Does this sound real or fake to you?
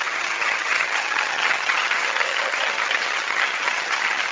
fake